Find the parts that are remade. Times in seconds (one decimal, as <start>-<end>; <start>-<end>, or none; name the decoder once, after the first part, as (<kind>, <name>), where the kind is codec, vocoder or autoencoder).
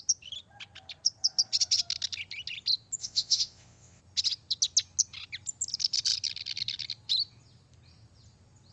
3.0-4.0 (vocoder, WaveNeXt)